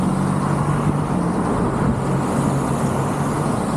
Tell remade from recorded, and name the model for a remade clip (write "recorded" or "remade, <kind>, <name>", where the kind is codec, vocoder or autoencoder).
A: recorded